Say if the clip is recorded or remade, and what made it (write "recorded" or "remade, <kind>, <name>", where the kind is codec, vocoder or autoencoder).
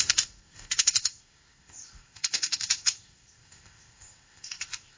remade, codec, ZipCodec